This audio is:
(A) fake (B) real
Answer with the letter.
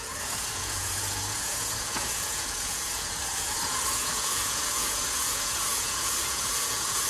A